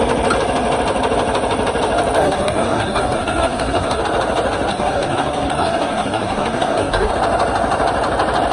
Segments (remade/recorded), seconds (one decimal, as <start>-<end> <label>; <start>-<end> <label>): 0.0-2.2 recorded; 2.2-4.0 remade; 4.0-4.7 recorded; 4.7-7.1 remade; 7.1-8.5 recorded